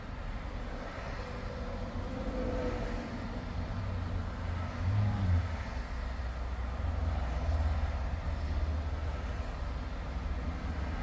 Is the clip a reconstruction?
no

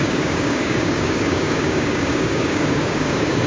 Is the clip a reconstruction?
yes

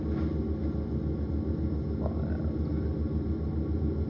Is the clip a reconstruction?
no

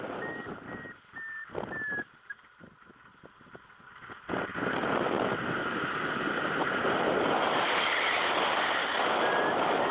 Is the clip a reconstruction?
no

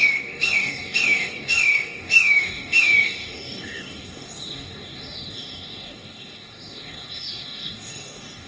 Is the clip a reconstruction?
yes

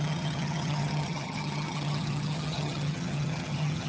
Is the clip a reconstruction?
yes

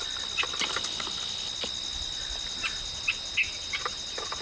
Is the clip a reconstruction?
no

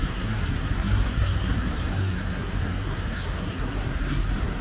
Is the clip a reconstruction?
yes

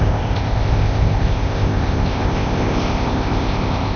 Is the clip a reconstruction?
yes